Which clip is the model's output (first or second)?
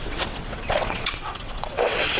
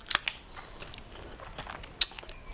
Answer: first